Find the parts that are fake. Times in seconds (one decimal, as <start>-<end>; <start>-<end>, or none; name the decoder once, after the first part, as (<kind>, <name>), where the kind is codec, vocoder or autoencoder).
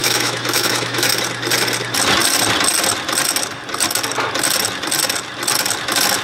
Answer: 0.0-1.1 (autoencoder, DAC-VAE)